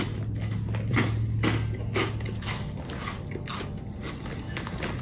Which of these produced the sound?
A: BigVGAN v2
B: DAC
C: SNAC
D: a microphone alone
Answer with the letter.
D